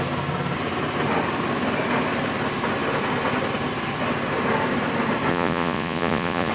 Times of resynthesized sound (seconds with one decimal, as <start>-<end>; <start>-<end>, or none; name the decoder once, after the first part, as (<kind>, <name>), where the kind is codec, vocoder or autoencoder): 5.3-6.5 (vocoder, Vocos)